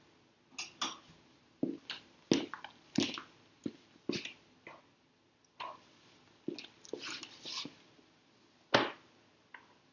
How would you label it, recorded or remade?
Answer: recorded